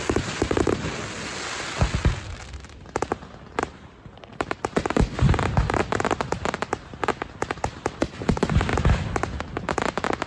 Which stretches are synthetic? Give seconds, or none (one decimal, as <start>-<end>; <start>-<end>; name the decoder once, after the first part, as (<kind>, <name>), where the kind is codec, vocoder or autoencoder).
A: none